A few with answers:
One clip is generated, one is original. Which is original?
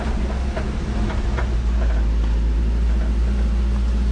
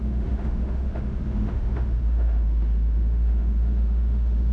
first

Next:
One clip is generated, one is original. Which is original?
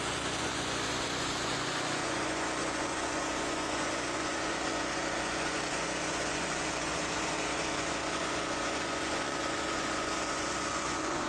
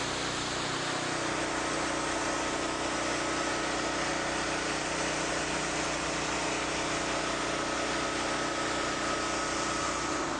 second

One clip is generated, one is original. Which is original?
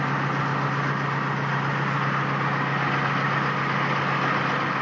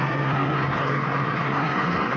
first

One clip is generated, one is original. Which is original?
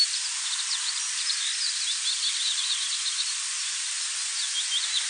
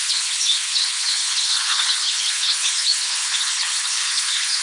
first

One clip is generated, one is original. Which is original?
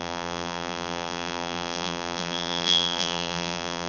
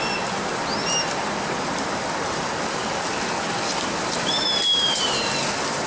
second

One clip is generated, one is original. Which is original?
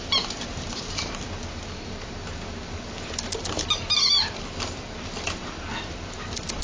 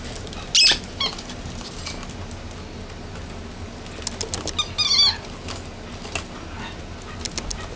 second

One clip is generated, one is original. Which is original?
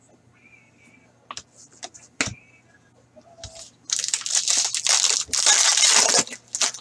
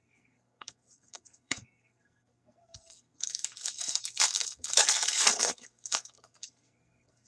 first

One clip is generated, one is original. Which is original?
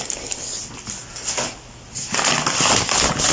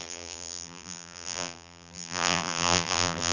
first